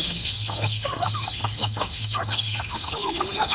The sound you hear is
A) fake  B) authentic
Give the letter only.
A